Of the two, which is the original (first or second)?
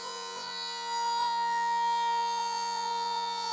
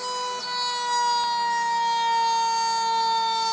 second